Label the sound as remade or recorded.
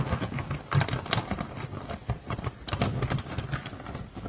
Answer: recorded